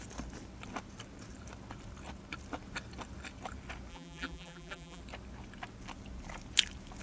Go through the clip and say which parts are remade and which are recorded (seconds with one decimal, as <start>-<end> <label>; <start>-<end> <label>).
0.0-3.9 recorded; 3.9-5.0 remade; 5.0-7.0 recorded